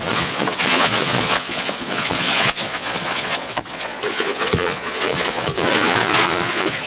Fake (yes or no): yes